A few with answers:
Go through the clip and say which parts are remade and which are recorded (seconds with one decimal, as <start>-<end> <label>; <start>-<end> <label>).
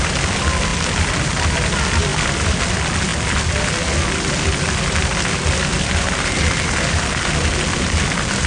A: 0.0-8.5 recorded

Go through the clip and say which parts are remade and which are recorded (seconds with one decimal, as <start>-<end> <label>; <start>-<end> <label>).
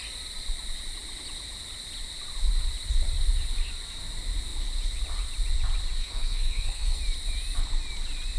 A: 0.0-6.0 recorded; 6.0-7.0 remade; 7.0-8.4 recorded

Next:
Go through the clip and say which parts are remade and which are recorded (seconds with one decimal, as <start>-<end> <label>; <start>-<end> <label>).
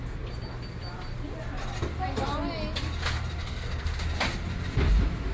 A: 0.0-3.4 recorded; 3.4-4.0 remade; 4.0-5.3 recorded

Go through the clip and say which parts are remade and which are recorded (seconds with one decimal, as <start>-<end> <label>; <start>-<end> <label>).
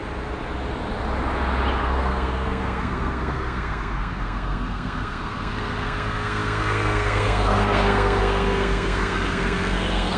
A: 0.0-1.8 recorded; 1.8-10.2 remade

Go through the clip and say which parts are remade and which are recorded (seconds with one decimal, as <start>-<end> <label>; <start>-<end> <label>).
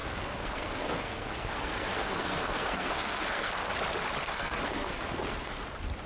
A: 0.0-3.7 remade; 3.7-4.2 recorded; 4.2-5.6 remade; 5.6-6.1 recorded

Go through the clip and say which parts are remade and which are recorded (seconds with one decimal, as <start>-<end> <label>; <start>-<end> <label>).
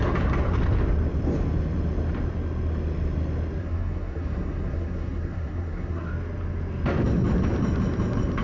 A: 0.0-3.6 recorded; 3.6-6.1 remade; 6.1-8.4 recorded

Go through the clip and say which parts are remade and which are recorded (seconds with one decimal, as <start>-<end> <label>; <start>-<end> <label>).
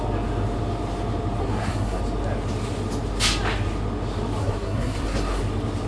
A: 0.0-1.4 recorded; 1.4-2.0 remade; 2.0-4.4 recorded; 4.4-5.4 remade; 5.4-5.9 recorded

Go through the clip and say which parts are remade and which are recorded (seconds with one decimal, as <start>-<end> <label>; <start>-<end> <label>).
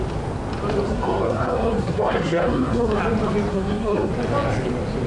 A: 0.0-0.9 recorded; 0.9-3.0 remade; 3.0-3.5 recorded; 3.5-4.1 remade; 4.1-5.1 recorded